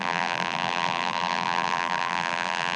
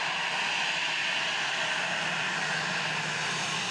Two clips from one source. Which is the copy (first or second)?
first